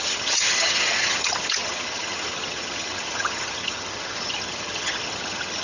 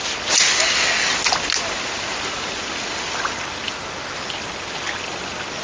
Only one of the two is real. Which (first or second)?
second